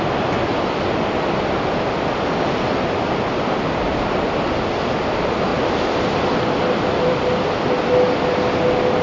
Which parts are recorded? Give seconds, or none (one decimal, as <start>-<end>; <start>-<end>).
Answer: 0.0-9.0